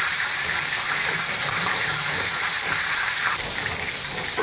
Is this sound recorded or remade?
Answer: remade